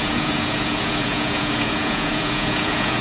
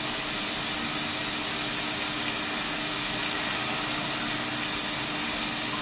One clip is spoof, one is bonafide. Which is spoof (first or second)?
first